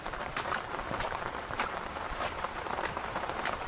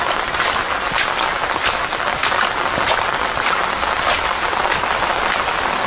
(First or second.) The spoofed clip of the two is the first